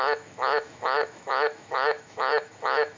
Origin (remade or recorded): remade